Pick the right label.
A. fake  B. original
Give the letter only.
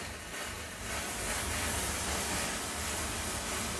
B